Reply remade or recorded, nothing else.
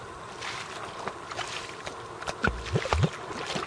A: recorded